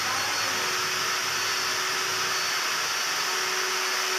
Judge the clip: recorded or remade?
recorded